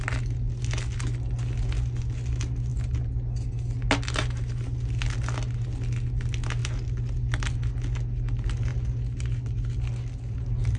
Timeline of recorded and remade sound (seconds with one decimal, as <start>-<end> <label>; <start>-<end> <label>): 0.0-10.8 recorded